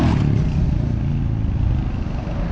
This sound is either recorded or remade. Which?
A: recorded